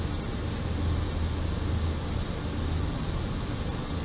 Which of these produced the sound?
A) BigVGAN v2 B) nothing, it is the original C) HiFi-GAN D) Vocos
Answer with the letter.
B